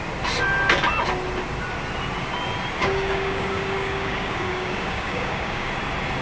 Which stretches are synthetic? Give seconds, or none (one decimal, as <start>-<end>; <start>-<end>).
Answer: 2.8-5.7